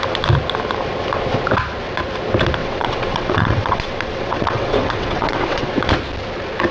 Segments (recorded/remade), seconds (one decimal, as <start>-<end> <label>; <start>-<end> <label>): 0.0-2.6 recorded; 2.6-5.9 remade; 5.9-6.7 recorded